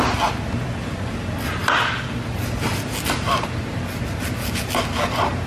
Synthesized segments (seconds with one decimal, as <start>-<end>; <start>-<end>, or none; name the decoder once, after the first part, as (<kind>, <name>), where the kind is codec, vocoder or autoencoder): none